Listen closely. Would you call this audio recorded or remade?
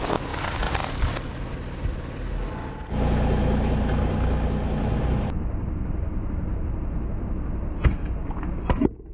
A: recorded